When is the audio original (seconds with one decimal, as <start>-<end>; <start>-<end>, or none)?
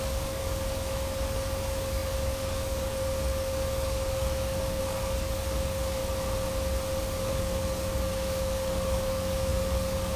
6.0-7.0